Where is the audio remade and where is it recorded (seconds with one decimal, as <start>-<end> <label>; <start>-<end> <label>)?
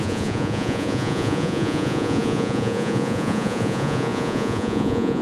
0.0-5.2 remade